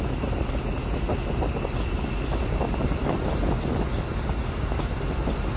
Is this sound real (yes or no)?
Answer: yes